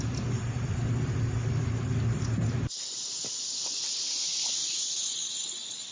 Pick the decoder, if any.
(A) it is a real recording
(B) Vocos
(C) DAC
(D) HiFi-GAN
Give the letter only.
A